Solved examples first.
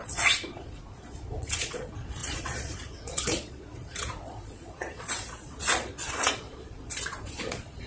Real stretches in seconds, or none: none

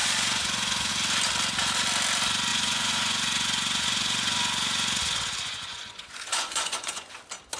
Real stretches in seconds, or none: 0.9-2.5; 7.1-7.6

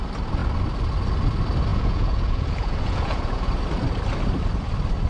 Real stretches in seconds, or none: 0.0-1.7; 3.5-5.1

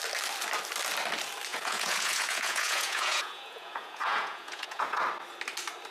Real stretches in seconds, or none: 0.0-1.5; 5.0-5.9